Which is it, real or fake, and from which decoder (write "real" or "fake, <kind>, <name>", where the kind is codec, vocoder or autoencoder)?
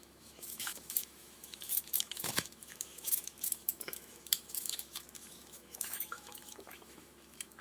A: fake, autoencoder, DAC-VAE